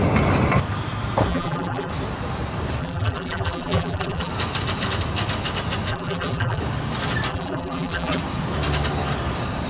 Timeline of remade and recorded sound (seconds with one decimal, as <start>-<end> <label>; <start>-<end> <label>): 0.0-1.3 recorded; 1.3-1.9 remade; 1.9-2.8 recorded; 2.8-4.3 remade; 4.3-5.9 recorded; 5.9-6.6 remade; 6.6-7.3 recorded; 7.3-8.2 remade; 8.2-9.7 recorded